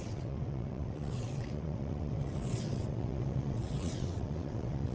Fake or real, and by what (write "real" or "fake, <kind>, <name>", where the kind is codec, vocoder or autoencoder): fake, vocoder, WaveNeXt